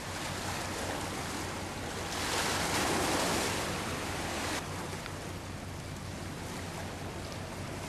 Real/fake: real